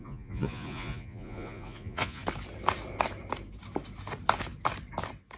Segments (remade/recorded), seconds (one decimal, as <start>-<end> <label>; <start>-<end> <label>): 0.0-2.2 remade; 2.2-5.4 recorded